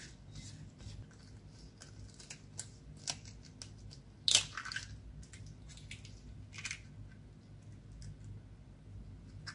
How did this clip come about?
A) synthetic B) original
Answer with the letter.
B